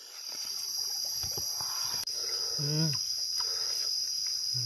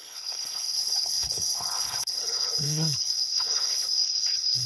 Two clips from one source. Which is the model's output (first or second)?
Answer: second